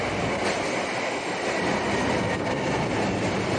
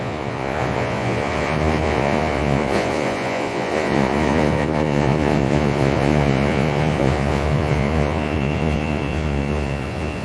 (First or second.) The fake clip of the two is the second